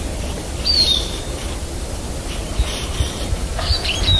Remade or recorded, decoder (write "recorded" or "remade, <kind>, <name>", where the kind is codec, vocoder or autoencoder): remade, vocoder, BigVGAN v2